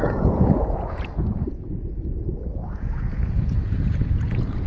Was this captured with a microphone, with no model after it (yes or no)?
no